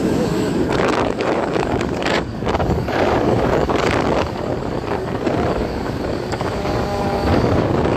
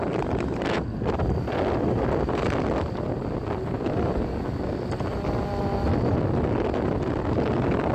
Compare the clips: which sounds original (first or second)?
second